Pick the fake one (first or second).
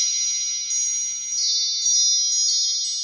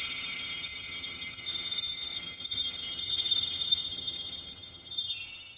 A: second